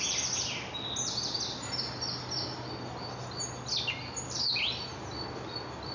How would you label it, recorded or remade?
recorded